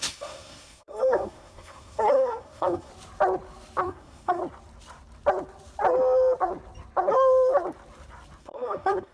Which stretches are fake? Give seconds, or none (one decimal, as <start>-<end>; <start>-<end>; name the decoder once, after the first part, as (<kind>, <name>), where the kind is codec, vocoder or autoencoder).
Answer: 0.0-2.9 (codec, SNAC); 3.8-4.4; 8.4-9.1